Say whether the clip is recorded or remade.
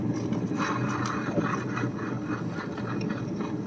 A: recorded